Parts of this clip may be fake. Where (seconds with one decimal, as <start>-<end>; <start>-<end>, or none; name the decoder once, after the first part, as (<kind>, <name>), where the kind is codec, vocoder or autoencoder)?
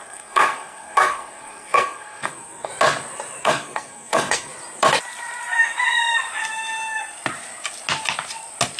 0.0-2.7 (codec, SNAC); 3.4-4.5